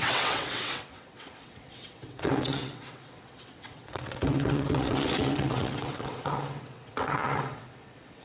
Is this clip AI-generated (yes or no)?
yes